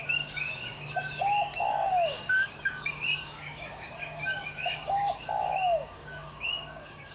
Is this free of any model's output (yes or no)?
no